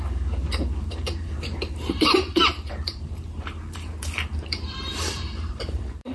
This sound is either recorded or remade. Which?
remade